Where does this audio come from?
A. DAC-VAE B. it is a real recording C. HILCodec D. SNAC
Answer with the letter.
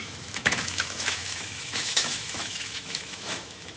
A